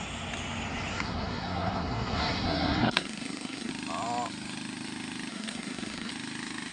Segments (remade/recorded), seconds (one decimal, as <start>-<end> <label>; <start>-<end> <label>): 0.0-0.9 recorded; 0.9-3.7 remade; 3.7-5.3 recorded; 5.3-6.1 remade; 6.1-6.7 recorded